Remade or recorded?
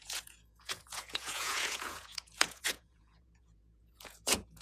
remade